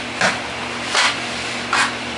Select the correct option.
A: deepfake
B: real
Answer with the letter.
B